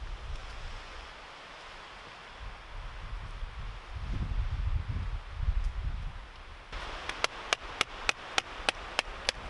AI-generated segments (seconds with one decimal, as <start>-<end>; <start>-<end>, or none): 0.4-1.1